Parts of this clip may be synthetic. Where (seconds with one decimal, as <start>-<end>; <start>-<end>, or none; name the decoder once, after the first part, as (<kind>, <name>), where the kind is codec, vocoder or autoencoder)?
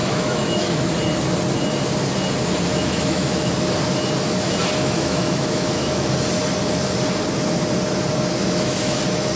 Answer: 0.0-0.9 (autoencoder, DAC-VAE); 2.7-3.5; 4.8-6.1; 8.4-9.0